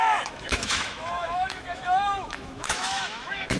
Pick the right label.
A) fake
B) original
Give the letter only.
A